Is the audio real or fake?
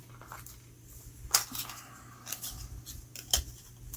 real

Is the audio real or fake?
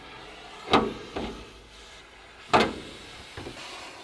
real